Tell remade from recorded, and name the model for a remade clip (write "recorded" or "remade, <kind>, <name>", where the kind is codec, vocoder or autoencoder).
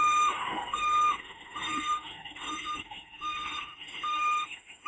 remade, autoencoder, DAC-VAE